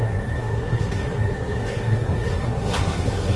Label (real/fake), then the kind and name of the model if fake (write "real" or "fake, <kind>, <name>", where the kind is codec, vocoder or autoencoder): fake, codec, SNAC